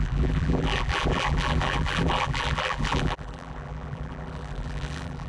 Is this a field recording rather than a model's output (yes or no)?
no